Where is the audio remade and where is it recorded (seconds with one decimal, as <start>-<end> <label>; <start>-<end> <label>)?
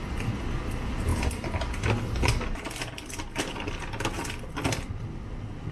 0.0-5.7 recorded